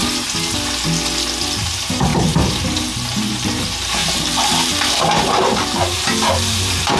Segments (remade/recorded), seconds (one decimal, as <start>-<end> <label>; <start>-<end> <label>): 0.0-1.7 recorded; 1.7-4.0 remade; 4.0-5.2 recorded; 5.2-7.0 remade